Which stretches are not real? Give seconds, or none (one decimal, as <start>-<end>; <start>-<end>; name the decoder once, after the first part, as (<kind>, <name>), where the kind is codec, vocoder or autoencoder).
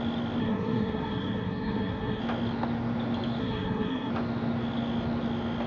0.4-2.2 (codec, SNAC); 3.4-4.1